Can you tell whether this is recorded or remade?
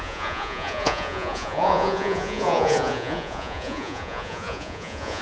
remade